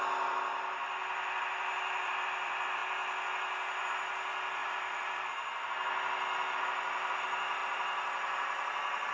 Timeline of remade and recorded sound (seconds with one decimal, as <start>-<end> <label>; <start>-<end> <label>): 0.0-9.1 recorded